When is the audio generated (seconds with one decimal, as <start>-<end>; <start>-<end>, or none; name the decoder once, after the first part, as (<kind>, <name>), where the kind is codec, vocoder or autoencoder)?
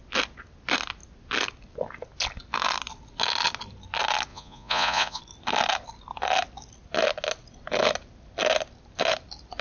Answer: 4.3-5.2 (vocoder, Vocos)